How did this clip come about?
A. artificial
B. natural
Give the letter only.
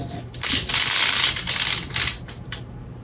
B